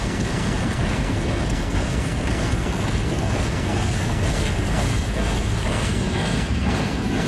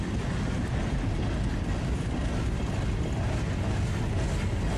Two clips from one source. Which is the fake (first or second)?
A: first